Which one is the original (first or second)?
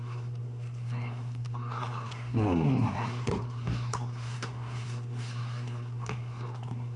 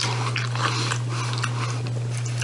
second